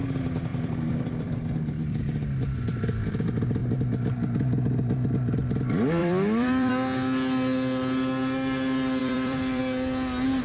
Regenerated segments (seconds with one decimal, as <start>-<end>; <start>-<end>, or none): 0.5-3.1; 6.0-6.7; 9.0-9.6